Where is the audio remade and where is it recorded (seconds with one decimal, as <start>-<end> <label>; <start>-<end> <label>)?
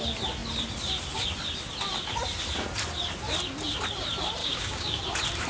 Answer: 0.0-4.4 recorded; 4.4-5.0 remade; 5.0-5.5 recorded